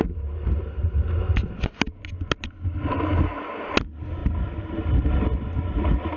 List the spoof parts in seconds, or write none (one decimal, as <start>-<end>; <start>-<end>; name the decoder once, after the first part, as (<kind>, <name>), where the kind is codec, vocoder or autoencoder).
none